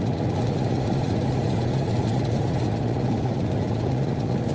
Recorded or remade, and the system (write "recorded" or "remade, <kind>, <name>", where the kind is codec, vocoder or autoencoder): remade, vocoder, Vocos